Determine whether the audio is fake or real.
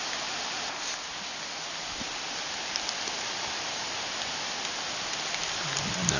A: real